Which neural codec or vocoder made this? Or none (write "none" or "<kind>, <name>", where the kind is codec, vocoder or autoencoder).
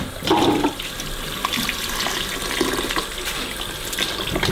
none